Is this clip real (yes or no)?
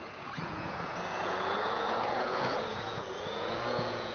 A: no